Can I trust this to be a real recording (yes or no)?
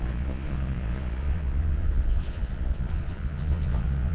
no